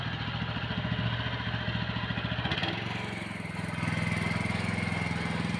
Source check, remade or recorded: recorded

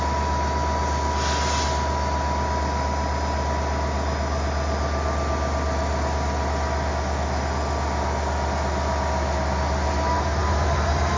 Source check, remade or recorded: recorded